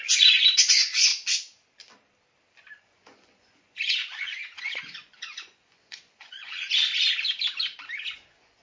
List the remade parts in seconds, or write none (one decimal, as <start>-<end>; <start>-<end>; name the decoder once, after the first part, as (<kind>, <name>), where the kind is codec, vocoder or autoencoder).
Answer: 0.0-1.1 (vocoder, Vocos); 2.7-6.9; 8.0-8.6